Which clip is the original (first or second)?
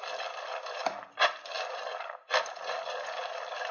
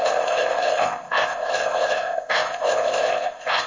first